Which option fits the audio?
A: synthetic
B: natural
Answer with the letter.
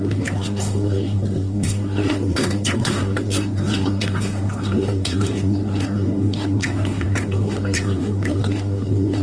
A